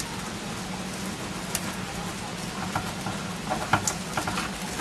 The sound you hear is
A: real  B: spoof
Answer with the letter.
A